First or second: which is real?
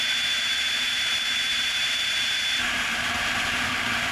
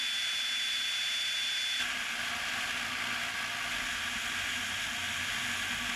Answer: second